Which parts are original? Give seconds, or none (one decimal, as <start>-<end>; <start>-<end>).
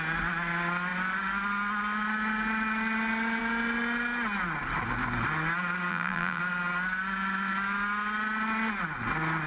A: 0.0-5.9; 6.4-9.5